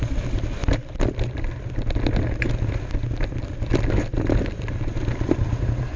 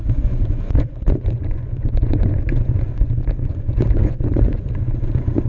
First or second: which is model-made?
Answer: second